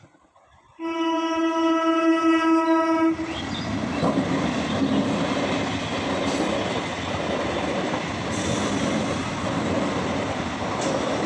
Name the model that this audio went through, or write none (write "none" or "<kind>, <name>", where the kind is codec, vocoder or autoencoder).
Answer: none